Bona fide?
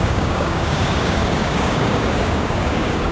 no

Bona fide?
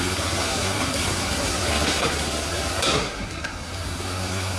no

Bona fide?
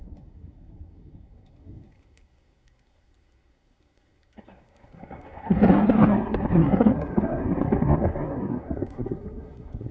no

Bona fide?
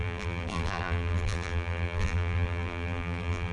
no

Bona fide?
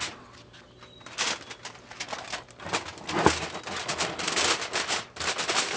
yes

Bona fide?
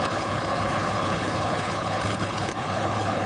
no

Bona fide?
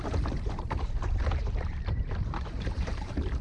no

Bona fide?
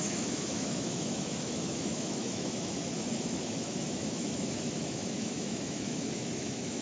no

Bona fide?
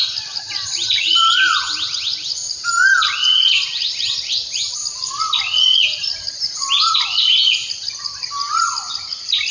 yes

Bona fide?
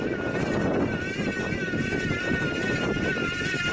yes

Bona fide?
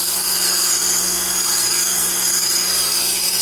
no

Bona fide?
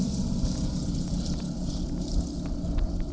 yes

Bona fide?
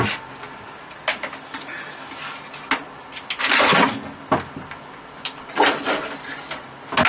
yes